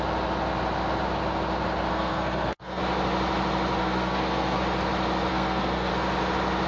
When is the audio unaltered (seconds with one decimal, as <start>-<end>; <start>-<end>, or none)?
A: 0.0-1.9; 2.8-3.8; 4.6-5.3; 5.9-6.7